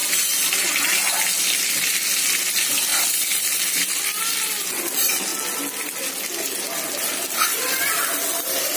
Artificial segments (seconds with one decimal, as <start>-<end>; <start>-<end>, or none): 0.0-1.7; 2.9-4.2